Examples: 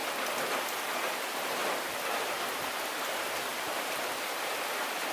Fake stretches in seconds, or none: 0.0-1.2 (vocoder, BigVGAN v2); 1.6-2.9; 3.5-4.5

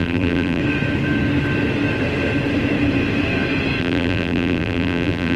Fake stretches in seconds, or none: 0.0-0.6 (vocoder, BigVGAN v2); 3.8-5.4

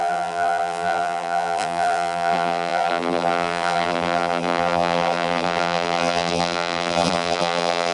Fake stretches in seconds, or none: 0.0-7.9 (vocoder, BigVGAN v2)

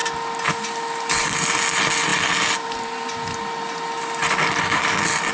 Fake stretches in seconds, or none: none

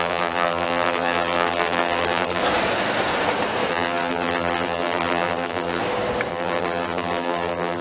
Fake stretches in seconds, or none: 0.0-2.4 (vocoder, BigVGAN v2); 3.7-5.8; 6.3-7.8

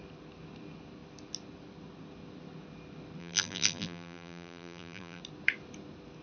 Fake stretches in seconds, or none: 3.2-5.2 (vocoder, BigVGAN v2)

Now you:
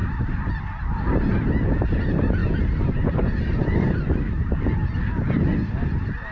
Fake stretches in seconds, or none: 0.0-0.5 (vocoder, BigVGAN v2); 2.4-5.3